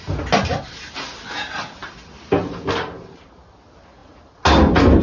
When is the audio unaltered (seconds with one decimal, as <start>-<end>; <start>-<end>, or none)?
0.0-1.8; 2.4-5.0